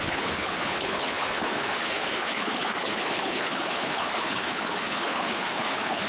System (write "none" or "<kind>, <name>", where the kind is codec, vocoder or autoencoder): codec, HILCodec